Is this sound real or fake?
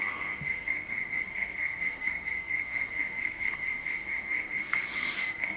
fake